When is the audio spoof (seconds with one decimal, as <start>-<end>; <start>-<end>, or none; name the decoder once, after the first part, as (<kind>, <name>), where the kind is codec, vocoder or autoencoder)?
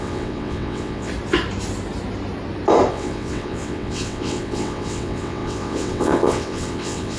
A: 0.0-1.1 (vocoder, WaveNeXt); 2.9-7.2